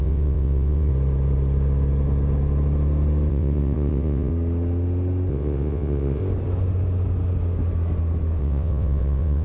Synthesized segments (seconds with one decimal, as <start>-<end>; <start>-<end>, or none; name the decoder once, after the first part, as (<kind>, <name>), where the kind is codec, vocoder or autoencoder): 0.0-0.9 (vocoder, WaveNeXt); 3.3-4.3; 5.3-6.2; 8.4-9.4